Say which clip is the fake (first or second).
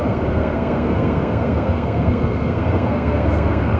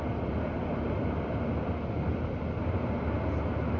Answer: first